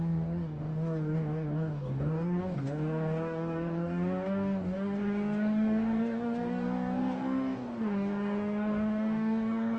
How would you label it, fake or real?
fake